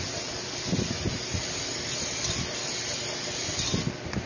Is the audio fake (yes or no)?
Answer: no